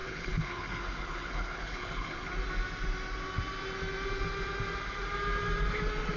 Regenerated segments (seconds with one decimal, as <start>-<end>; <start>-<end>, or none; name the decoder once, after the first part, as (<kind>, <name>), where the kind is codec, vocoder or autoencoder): 0.0-2.3 (codec, HILCodec)